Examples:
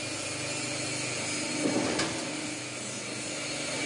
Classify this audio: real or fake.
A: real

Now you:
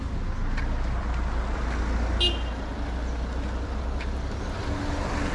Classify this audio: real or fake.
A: real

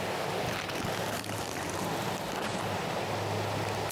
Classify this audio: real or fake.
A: real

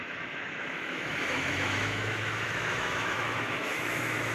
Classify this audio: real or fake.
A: fake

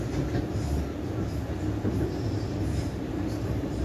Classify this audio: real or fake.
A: real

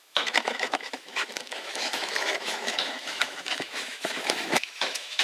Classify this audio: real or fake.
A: fake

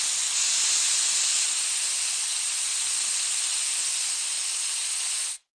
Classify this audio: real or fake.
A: real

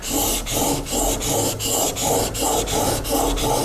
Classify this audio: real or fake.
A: real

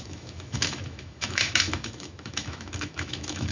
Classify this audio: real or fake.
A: fake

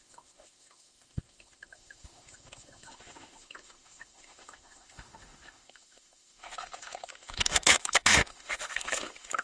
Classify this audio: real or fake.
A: fake